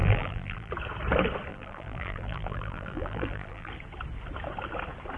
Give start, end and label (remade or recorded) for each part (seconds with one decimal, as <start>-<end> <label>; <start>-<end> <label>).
0.0-0.7 remade; 0.7-1.5 recorded; 1.5-3.7 remade; 3.7-5.2 recorded